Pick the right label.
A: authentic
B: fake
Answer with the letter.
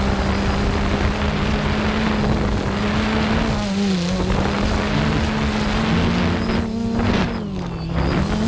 A